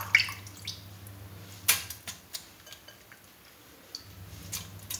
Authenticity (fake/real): real